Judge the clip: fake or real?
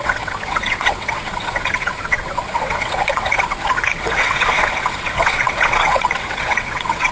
fake